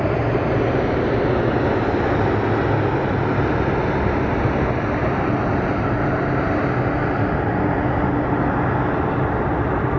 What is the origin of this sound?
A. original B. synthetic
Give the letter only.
A